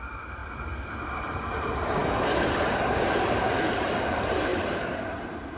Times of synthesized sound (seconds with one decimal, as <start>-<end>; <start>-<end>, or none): 0.0-0.4; 1.0-2.0; 3.0-5.6